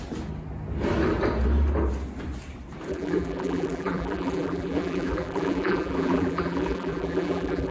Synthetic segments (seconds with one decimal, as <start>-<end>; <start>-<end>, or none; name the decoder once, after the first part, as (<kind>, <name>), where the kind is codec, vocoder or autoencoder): 2.9-7.7 (vocoder, BigVGAN v2)